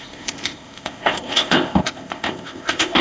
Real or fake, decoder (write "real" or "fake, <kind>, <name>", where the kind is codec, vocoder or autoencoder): fake, codec, ZipCodec